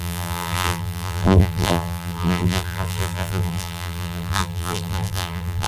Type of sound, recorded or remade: remade